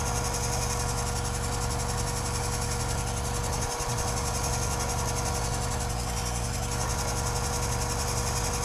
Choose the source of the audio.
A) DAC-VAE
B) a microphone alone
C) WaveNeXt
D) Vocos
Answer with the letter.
B